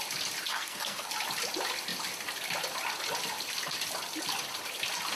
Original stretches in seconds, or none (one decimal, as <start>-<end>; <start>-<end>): 0.0-0.5; 1.1-5.2